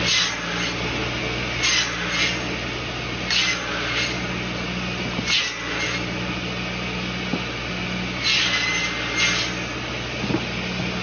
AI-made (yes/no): no